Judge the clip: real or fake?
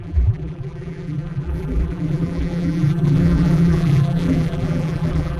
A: fake